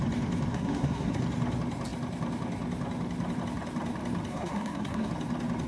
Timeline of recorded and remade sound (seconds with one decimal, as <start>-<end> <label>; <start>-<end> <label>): 0.0-0.5 recorded; 0.5-1.2 remade; 1.2-4.3 recorded; 4.3-5.1 remade; 5.1-5.7 recorded